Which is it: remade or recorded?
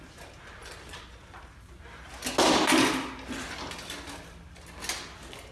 recorded